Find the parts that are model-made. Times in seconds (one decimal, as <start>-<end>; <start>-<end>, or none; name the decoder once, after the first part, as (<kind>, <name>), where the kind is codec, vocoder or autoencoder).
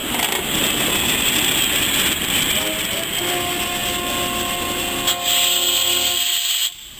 none